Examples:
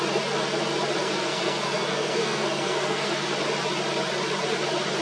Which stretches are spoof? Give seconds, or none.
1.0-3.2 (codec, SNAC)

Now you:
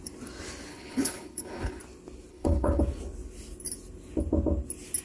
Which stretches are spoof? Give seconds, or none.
0.7-1.8 (codec, HILCodec); 2.3-2.8

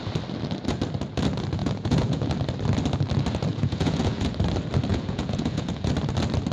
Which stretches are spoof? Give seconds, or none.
1.6-2.3 (vocoder, Vocos); 3.5-4.3; 4.9-5.9

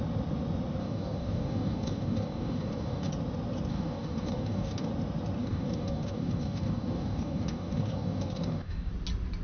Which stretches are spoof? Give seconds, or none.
0.8-3.1 (codec, DAC); 3.7-4.9; 5.4-8.9